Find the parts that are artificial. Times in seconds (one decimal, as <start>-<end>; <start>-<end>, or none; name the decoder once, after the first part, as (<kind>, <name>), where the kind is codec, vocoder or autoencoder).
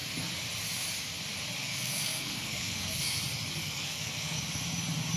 1.6-3.2 (codec, SNAC); 3.6-4.4